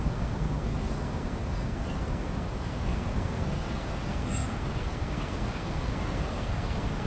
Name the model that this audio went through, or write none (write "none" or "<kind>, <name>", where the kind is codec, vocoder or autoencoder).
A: codec, SNAC